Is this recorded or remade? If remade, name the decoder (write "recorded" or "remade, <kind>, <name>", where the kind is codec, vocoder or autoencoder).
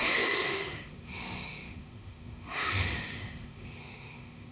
remade, autoencoder, DAC-VAE